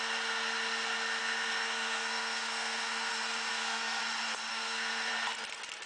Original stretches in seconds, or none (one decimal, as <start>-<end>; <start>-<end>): 0.0-1.2; 3.1-3.5; 4.0-4.5; 5.1-5.9